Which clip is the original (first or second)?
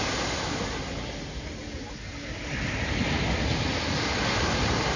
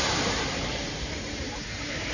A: first